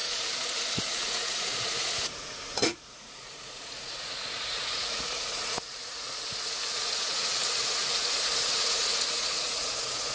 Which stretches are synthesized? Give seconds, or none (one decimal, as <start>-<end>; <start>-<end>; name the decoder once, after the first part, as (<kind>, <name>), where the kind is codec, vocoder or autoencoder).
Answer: 0.0-10.1 (vocoder, Vocos)